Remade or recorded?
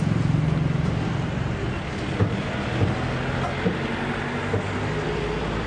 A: recorded